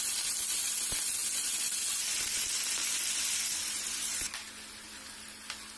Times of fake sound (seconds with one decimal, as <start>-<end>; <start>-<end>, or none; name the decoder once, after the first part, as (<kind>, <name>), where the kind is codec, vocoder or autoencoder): none